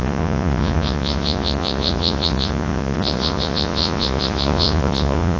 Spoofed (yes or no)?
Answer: yes